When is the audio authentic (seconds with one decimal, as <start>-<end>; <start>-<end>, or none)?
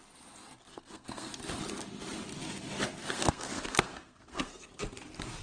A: 0.0-0.7; 1.3-3.0; 4.7-5.4